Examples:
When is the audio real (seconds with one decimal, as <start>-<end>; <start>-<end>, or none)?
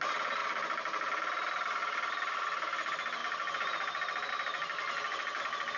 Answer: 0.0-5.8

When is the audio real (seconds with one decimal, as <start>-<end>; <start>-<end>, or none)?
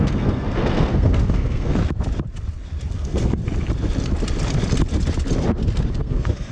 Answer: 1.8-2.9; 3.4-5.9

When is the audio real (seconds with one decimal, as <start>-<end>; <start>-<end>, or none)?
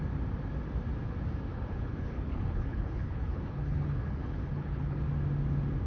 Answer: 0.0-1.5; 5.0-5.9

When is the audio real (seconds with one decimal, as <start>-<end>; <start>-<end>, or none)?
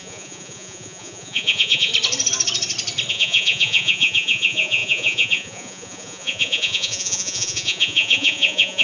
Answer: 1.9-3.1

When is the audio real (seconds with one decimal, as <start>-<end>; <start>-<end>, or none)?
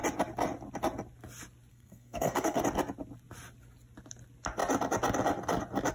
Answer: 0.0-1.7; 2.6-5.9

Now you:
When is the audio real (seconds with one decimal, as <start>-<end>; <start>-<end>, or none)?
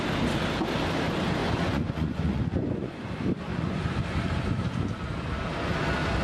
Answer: 0.0-1.4; 3.1-3.5; 4.0-6.2